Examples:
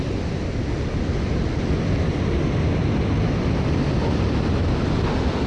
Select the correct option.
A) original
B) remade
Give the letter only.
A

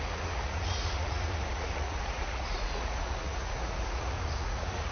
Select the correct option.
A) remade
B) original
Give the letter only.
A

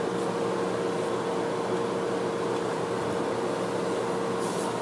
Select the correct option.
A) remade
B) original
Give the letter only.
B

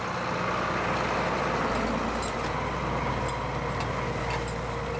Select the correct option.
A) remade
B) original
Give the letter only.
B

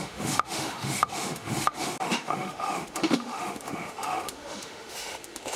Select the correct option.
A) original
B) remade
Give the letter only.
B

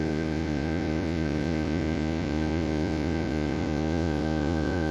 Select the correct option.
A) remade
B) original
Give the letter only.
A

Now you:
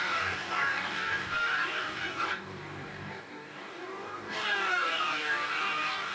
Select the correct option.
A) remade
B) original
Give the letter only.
A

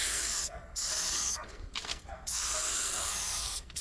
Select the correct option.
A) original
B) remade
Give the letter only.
B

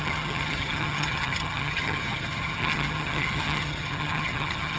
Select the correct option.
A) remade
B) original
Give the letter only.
A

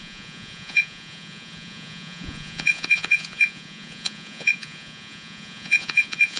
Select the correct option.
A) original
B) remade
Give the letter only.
B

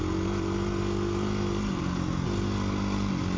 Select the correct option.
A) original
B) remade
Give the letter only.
A